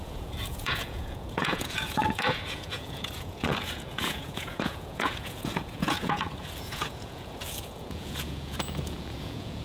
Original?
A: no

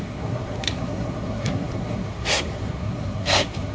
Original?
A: no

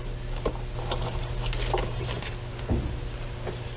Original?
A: yes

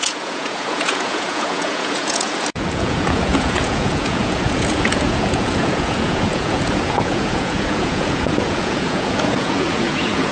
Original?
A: no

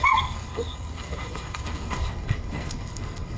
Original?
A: no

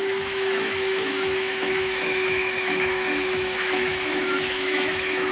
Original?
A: no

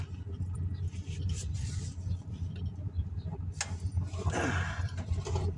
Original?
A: yes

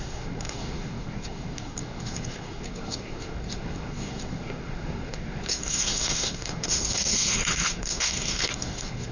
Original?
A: no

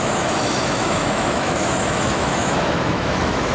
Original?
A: no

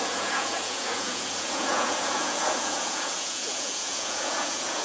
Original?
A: no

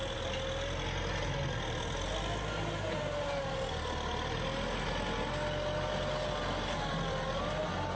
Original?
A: yes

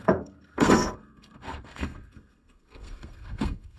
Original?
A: no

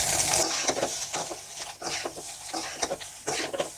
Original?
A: yes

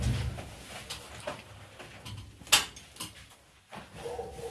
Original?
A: yes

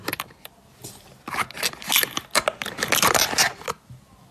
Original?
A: yes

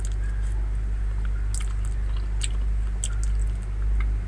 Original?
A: yes